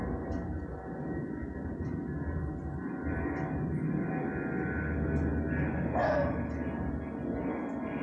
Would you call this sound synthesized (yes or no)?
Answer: no